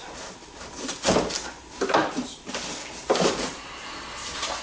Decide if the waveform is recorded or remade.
recorded